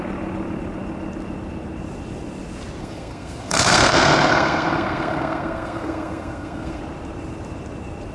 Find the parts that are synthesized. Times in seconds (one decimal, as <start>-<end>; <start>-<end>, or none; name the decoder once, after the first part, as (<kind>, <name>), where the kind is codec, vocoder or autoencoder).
2.8-6.8 (codec, SNAC)